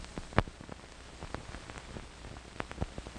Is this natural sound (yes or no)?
yes